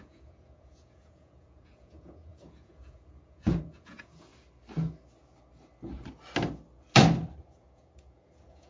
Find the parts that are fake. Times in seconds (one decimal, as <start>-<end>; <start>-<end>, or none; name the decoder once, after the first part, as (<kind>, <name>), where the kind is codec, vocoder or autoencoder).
0.0-4.3 (vocoder, Vocos); 7.4-8.7